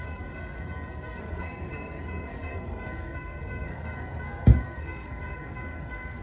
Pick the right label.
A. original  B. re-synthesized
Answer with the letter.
B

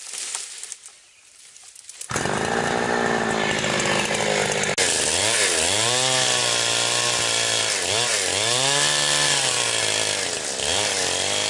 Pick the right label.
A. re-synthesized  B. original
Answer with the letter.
B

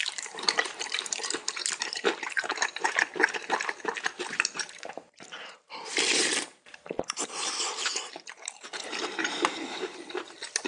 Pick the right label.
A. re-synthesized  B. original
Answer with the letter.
A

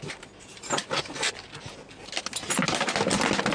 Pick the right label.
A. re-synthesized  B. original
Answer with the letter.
B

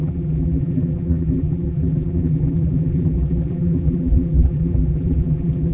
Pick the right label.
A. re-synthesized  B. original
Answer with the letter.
A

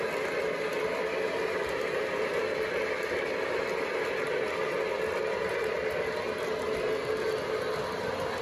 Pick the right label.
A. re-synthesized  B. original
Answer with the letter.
B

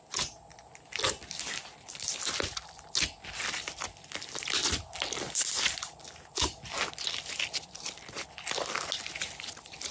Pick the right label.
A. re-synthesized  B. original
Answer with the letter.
B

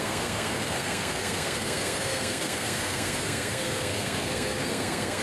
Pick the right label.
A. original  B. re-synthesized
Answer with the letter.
B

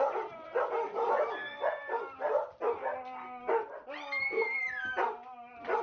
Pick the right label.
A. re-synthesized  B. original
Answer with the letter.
B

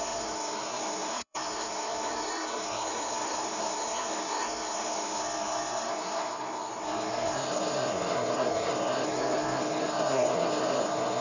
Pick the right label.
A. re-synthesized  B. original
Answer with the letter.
A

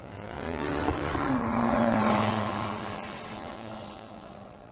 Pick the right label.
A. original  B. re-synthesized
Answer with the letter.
B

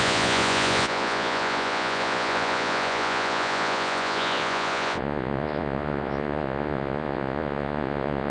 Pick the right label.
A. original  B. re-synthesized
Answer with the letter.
B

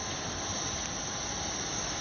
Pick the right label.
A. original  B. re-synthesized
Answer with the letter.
A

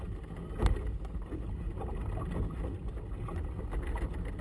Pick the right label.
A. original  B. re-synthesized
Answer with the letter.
A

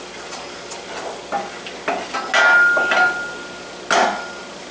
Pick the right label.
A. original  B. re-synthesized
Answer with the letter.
A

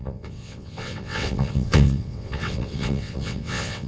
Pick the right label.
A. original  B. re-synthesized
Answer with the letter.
B